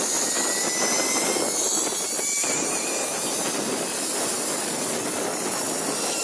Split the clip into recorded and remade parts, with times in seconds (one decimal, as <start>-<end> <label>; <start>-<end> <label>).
0.0-6.2 recorded